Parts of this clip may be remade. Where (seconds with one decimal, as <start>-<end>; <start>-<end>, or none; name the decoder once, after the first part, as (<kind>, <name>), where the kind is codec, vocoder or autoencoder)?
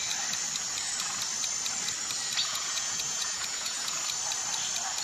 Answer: 2.5-4.0 (vocoder, Vocos)